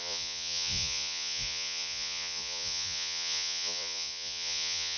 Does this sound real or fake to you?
fake